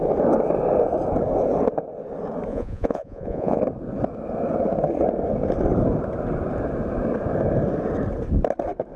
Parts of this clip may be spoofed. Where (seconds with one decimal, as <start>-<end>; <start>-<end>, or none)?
2.5-3.6